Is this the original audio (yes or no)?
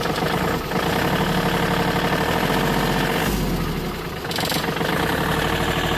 yes